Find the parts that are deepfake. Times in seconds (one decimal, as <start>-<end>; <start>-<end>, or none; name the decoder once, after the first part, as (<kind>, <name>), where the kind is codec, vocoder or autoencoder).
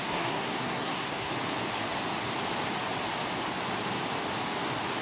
0.0-1.3 (codec, SNAC)